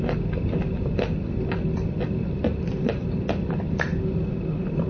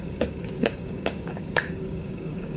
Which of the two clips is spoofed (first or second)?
second